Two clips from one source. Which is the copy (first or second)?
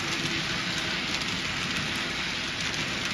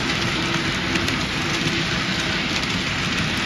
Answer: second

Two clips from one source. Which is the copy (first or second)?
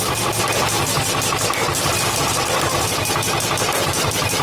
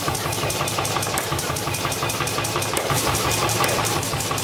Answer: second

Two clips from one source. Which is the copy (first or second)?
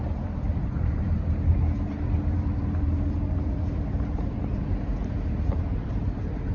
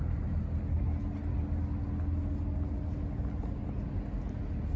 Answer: first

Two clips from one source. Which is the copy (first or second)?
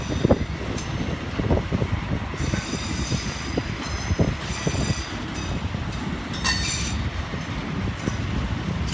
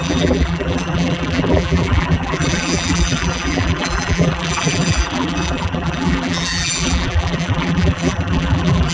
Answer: second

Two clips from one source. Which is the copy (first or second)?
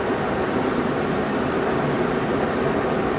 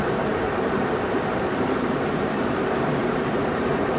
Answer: second